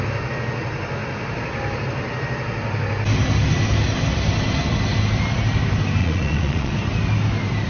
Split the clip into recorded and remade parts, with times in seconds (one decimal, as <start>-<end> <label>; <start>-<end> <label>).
0.0-6.0 recorded; 6.0-6.7 remade; 6.7-7.7 recorded